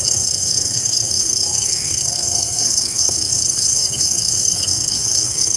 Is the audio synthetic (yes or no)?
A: yes